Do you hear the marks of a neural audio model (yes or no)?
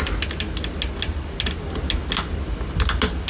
no